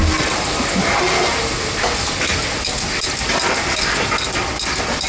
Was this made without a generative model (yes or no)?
yes